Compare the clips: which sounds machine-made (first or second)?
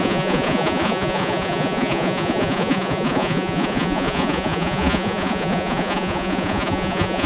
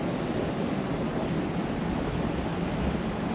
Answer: first